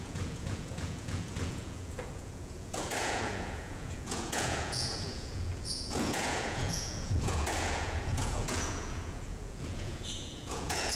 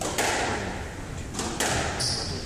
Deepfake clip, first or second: first